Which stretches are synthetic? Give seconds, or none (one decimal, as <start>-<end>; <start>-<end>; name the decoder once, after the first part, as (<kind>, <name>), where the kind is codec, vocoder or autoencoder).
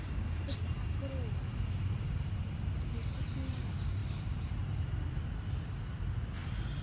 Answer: none